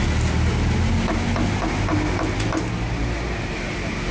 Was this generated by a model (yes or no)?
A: no